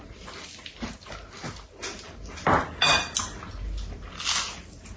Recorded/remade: recorded